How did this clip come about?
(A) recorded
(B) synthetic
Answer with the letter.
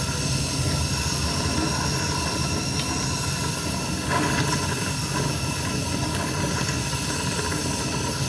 A